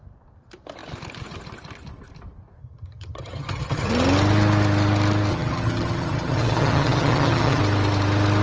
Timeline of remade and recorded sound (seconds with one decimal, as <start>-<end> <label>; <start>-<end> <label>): 0.0-2.6 recorded; 2.6-3.9 remade; 3.9-5.3 recorded; 5.3-7.6 remade; 7.6-8.4 recorded